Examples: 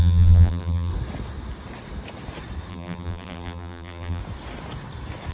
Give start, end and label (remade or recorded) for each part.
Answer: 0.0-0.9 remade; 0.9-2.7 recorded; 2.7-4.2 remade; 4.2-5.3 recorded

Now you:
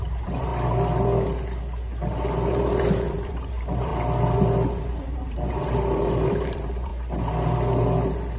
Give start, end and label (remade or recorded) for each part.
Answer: 0.0-0.5 remade; 0.5-2.5 recorded; 2.5-3.9 remade; 3.9-4.9 recorded; 4.9-6.9 remade; 6.9-8.4 recorded

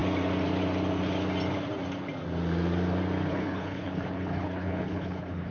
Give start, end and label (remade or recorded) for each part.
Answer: 0.0-3.3 recorded; 3.3-5.5 remade

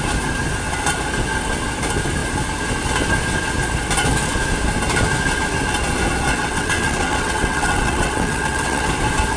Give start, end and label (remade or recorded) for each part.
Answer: 0.0-6.3 recorded; 6.3-8.9 remade; 8.9-9.4 recorded

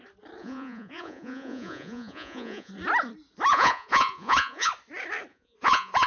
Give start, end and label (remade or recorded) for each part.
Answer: 0.0-0.4 recorded; 0.4-2.7 remade; 2.7-3.5 recorded; 3.5-4.7 remade; 4.7-5.3 recorded; 5.3-6.1 remade